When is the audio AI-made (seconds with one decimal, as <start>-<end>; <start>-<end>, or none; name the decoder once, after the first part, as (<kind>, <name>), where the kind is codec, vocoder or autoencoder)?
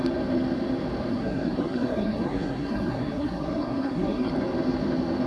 1.1-4.3 (codec, SNAC)